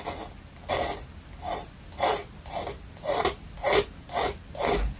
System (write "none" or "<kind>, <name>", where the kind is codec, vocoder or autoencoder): none